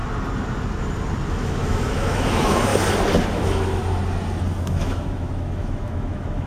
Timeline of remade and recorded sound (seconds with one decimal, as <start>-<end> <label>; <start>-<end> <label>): 0.0-1.3 recorded; 1.3-2.7 remade; 2.7-3.3 recorded; 3.3-3.8 remade; 3.8-4.7 recorded; 4.7-6.5 remade

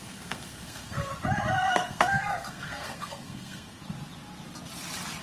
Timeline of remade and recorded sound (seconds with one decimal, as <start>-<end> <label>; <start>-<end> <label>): 0.0-1.1 remade; 1.1-1.7 recorded; 1.7-3.8 remade; 3.8-5.2 recorded

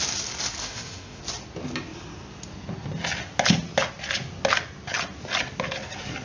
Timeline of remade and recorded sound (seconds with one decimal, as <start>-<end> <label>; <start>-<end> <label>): 0.0-0.6 recorded; 0.6-1.2 remade; 1.2-6.2 recorded

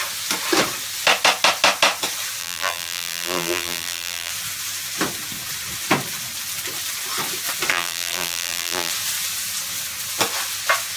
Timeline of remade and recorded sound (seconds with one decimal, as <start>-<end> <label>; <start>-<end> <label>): 0.0-2.4 recorded; 2.4-4.3 remade; 4.3-7.7 recorded; 7.7-8.9 remade; 8.9-11.0 recorded

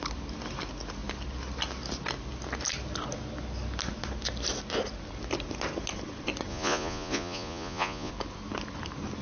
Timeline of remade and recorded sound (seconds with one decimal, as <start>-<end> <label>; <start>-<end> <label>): 0.0-6.5 recorded; 6.5-8.1 remade; 8.1-9.2 recorded

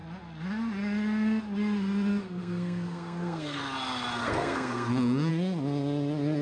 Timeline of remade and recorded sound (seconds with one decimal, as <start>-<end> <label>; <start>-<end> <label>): 0.0-2.2 recorded; 2.2-3.6 remade; 3.6-4.2 recorded; 4.2-5.3 remade; 5.3-6.4 recorded